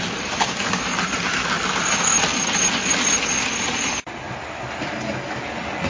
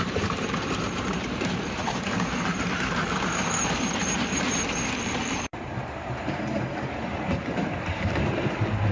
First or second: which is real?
first